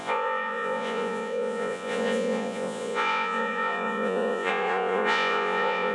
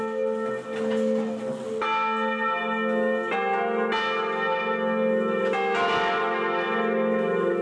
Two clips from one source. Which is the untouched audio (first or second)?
second